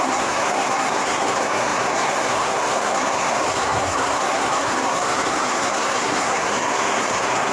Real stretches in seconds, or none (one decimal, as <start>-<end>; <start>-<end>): none